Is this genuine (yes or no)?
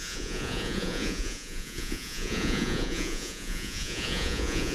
no